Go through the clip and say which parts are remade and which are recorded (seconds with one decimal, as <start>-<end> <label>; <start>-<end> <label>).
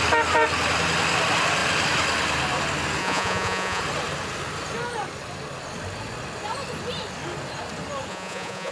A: 0.0-3.0 recorded; 3.0-3.8 remade; 3.8-8.1 recorded; 8.1-8.7 remade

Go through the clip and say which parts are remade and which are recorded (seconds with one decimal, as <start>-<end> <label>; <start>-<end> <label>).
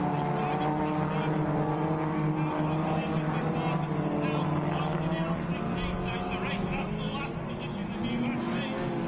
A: 0.0-9.1 recorded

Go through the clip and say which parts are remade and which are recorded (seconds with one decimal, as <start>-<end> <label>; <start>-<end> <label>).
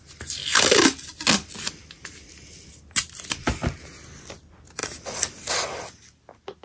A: 0.0-6.6 recorded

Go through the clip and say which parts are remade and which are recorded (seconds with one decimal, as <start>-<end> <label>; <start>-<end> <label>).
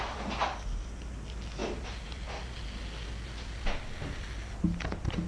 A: 0.0-5.3 recorded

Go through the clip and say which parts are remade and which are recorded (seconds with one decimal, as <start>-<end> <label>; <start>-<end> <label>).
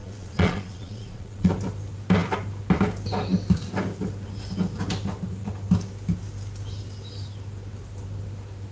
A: 0.0-1.5 remade; 1.5-8.7 recorded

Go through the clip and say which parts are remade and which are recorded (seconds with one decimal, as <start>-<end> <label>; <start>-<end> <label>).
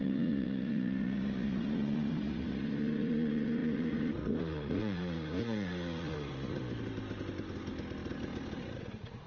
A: 0.0-6.6 remade; 6.6-8.6 recorded; 8.6-9.3 remade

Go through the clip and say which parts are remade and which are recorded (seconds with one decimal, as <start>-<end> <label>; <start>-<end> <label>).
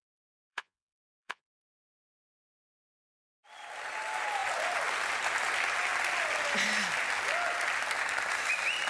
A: 0.0-0.5 recorded; 0.5-1.4 remade; 1.4-8.9 recorded